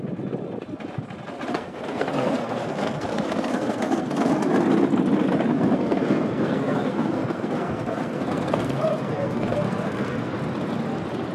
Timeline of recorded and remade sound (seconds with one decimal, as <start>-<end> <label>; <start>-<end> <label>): 0.0-1.5 recorded; 1.5-4.3 remade; 4.3-5.5 recorded; 5.5-10.3 remade; 10.3-11.3 recorded